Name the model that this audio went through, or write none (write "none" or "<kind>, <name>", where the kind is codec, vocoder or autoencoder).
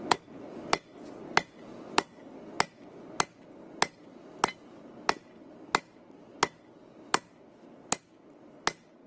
none